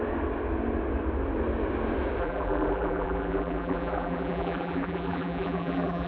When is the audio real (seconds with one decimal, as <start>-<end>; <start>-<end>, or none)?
0.0-2.2